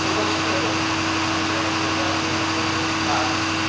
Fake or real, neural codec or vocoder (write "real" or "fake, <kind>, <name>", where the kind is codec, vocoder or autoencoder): real